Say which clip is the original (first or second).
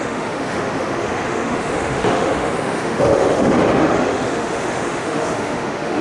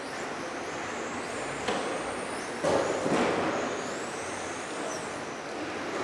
second